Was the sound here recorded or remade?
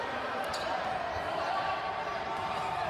remade